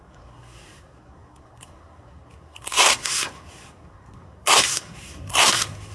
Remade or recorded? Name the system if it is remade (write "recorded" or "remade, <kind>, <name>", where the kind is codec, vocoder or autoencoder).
remade, codec, SNAC